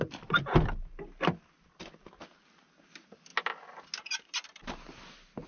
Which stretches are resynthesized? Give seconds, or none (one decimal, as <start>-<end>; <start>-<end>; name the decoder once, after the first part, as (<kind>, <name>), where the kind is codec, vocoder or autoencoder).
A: none